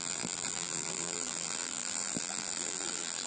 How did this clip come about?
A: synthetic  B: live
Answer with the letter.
A